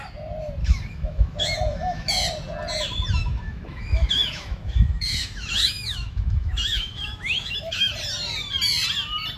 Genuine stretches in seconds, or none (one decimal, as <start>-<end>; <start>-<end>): 0.0-0.6; 2.1-3.2; 7.9-9.4